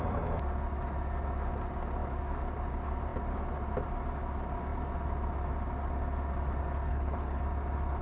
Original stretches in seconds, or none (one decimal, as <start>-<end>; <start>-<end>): 0.0-6.9; 7.4-8.0